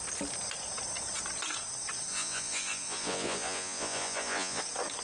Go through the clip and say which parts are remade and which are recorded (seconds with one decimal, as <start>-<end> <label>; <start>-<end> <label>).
0.0-2.1 recorded; 2.1-4.6 remade; 4.6-5.0 recorded